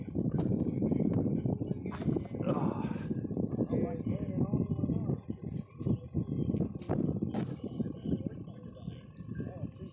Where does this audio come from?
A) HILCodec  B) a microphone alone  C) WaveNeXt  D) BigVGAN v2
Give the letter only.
B